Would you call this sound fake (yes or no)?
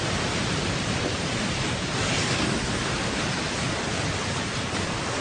yes